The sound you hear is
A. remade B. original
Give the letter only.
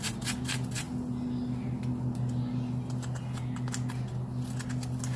B